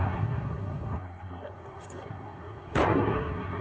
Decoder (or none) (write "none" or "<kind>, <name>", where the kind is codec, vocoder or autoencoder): codec, SNAC